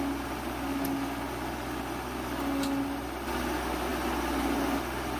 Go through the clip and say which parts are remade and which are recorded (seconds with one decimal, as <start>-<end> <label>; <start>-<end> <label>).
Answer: 0.0-5.2 recorded